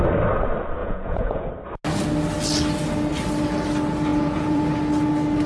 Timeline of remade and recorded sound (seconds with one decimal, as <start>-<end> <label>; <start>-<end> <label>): 0.0-0.8 recorded; 0.8-1.5 remade; 1.5-4.1 recorded; 4.1-4.6 remade; 4.6-5.5 recorded